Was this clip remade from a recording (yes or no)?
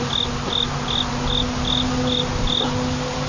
no